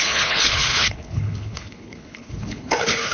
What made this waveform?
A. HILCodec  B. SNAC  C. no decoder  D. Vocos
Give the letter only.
A